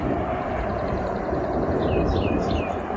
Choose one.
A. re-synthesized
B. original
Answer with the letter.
A